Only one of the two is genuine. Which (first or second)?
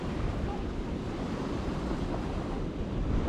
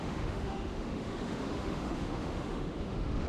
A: first